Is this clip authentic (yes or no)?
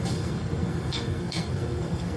no